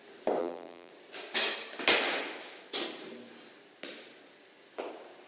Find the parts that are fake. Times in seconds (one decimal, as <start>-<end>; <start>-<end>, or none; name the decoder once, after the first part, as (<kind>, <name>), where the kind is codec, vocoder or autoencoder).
0.4-0.9 (vocoder, BigVGAN v2)